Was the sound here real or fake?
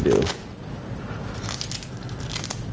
real